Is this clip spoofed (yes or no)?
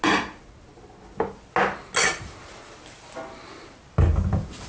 no